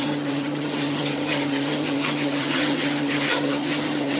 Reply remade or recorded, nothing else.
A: remade